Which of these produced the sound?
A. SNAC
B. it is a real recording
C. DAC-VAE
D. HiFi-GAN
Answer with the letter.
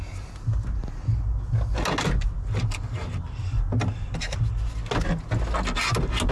B